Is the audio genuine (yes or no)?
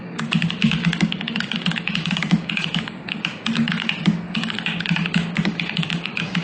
no